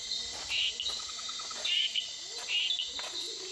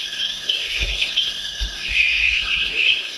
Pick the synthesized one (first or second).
second